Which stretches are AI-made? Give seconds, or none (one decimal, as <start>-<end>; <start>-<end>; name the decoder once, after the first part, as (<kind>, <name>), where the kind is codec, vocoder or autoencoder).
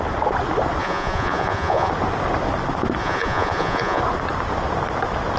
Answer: 0.8-1.9 (vocoder, Vocos); 3.0-4.0